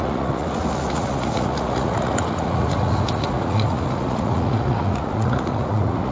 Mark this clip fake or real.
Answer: fake